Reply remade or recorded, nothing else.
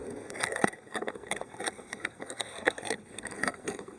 remade